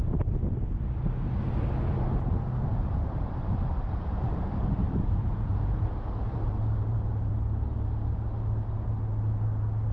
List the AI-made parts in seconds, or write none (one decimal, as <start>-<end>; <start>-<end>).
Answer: 2.7-7.3